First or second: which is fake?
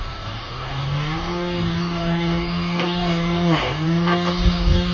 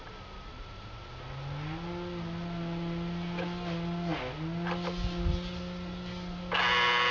first